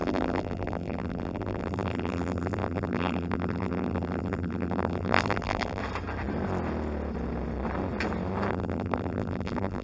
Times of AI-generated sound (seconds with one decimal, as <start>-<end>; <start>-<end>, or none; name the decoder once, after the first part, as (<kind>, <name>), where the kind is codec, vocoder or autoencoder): 0.0-5.8 (vocoder, BigVGAN v2); 8.5-9.8